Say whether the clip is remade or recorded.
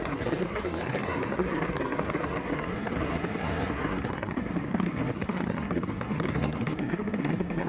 remade